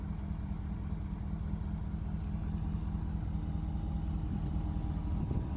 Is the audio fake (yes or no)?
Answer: no